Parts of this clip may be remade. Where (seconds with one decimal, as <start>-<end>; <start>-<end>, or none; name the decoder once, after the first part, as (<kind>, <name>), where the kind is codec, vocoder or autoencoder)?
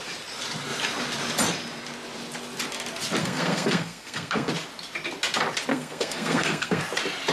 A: 3.2-4.5 (codec, SNAC); 5.7-6.8